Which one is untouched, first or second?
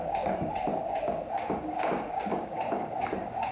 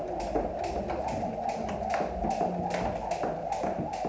second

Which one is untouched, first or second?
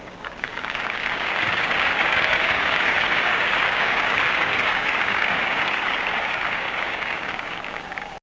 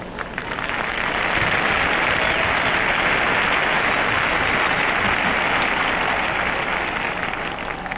second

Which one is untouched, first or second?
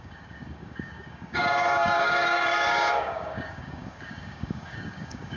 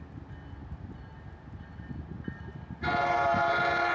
second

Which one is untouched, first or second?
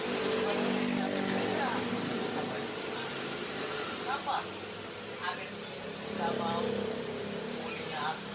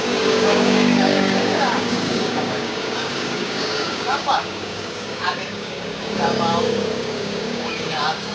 first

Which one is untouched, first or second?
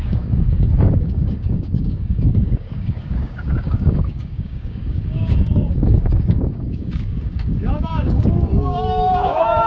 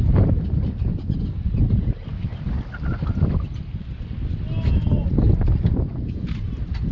second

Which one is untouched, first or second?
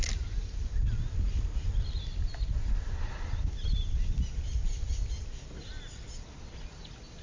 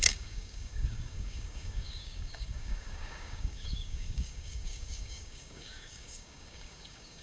first